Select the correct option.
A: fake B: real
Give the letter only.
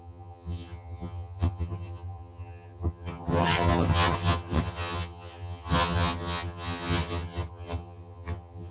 A